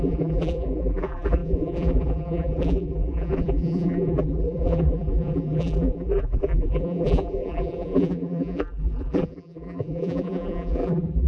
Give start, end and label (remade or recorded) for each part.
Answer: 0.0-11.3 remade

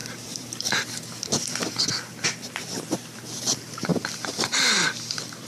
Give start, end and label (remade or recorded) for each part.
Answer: 0.0-1.8 remade; 1.8-3.9 recorded; 3.9-5.5 remade

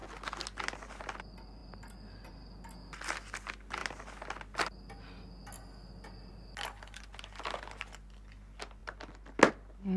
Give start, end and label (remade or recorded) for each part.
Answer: 0.0-10.0 recorded